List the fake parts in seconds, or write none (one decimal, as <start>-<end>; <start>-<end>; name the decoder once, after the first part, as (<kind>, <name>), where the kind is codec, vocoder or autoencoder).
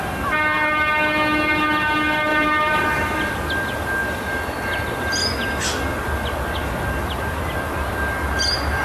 2.3-3.3 (vocoder, BigVGAN v2)